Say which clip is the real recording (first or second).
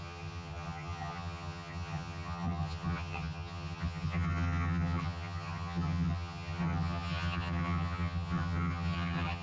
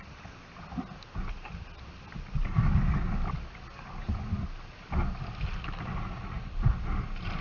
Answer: second